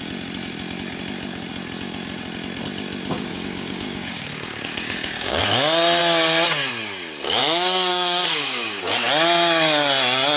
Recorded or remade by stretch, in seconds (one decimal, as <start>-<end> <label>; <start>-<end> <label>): 0.0-3.3 recorded; 3.3-5.4 remade; 5.4-7.4 recorded; 7.4-8.8 remade; 8.8-10.4 recorded